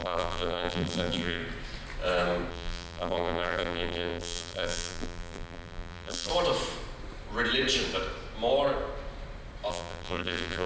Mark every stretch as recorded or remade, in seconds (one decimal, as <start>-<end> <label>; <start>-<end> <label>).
0.0-1.4 remade; 1.4-2.5 recorded; 2.5-6.3 remade; 6.3-9.7 recorded; 9.7-10.7 remade